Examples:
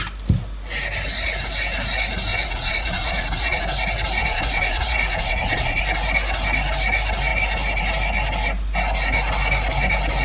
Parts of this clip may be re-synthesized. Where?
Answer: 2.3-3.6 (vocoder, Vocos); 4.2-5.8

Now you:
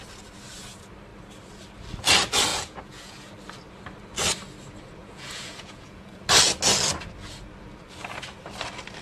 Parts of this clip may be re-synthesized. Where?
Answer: 2.5-3.3 (vocoder, Vocos); 5.0-6.2

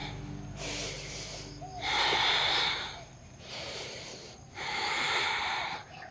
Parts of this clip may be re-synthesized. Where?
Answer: 2.3-6.1 (vocoder, BigVGAN v2)

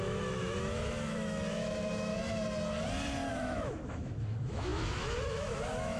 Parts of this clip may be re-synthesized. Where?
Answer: 0.0-2.1 (autoencoder, DAC-VAE); 3.3-6.0

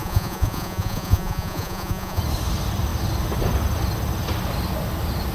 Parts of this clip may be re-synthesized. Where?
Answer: 0.0-2.2 (vocoder, Vocos)

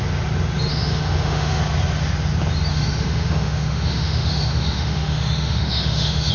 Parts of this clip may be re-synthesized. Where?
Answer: 0.7-1.6 (autoencoder, DAC-VAE); 2.7-6.3

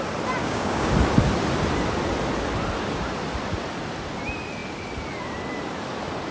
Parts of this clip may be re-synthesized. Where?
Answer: 0.4-0.9 (codec, DAC)

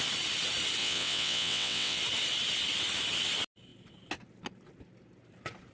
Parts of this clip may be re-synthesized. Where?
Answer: 0.8-2.0 (vocoder, WaveNeXt)